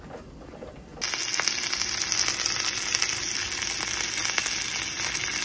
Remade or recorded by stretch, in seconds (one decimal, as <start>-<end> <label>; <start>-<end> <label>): 0.0-5.4 recorded